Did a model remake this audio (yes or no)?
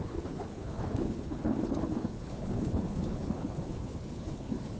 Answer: yes